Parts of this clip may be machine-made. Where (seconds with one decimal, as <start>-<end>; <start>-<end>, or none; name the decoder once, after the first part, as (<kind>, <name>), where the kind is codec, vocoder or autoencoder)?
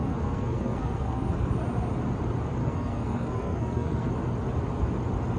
0.0-1.5 (codec, SNAC); 2.6-4.1